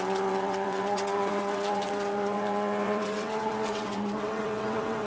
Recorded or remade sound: remade